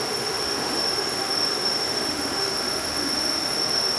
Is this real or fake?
fake